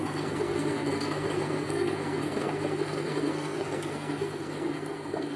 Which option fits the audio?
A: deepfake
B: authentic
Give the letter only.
A